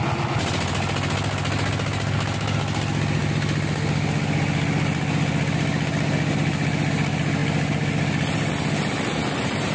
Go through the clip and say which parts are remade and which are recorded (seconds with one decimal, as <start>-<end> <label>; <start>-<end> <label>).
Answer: 0.0-9.7 recorded